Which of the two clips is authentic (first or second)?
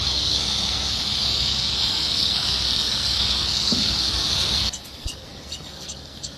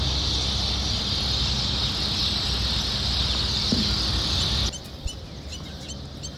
second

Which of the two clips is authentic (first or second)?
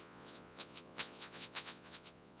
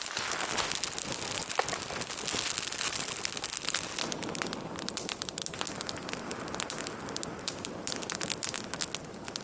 second